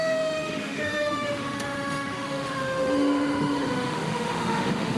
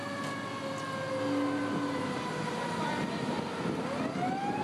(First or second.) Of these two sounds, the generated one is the first